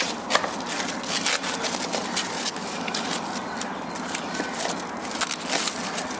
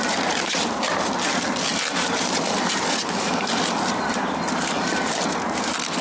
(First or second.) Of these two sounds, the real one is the first